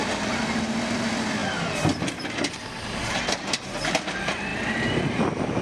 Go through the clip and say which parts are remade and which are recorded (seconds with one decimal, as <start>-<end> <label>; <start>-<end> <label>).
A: 0.0-5.6 recorded